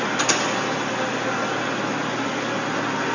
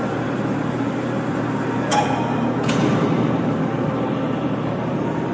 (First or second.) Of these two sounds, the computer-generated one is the second